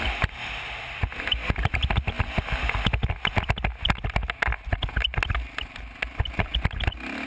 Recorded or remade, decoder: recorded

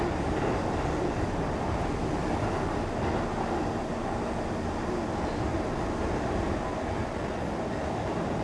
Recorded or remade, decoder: recorded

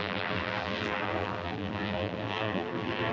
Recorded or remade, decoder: remade, vocoder, BigVGAN v2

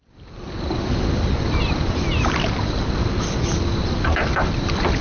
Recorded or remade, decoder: recorded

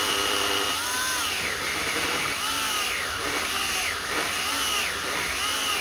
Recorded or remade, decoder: recorded